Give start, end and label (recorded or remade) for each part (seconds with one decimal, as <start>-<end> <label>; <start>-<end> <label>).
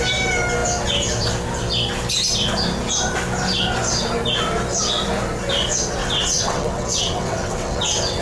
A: 0.0-6.0 recorded; 6.0-8.2 remade